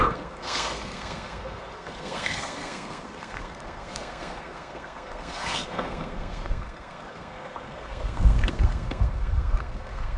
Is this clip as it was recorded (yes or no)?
no